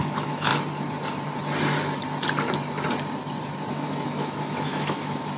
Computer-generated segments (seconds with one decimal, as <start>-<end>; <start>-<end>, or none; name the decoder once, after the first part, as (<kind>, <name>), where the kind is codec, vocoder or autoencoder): 0.0-0.5 (autoencoder, DAC-VAE); 3.7-5.4

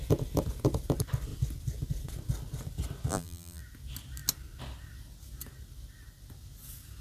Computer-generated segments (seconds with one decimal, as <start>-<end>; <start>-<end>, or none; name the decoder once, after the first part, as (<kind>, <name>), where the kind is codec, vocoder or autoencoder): 3.1-3.6 (vocoder, BigVGAN v2)